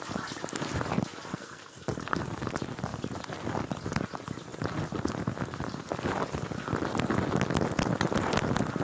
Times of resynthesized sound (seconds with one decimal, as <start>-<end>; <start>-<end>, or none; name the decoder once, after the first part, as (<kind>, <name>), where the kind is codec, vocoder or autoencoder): 1.3-2.5 (codec, SNAC)